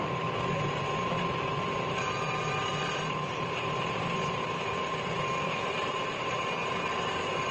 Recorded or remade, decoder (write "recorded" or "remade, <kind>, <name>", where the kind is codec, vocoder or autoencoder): remade, vocoder, BigVGAN v2